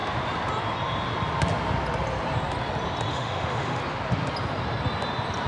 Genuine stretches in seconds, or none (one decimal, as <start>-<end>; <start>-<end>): 0.0-3.1; 3.8-5.5